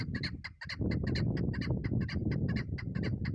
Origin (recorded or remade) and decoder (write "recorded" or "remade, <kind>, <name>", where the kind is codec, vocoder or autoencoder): recorded